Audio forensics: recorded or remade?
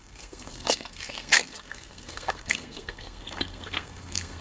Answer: remade